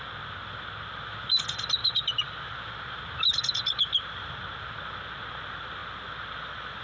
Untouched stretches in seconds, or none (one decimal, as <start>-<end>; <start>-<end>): 0.0-6.8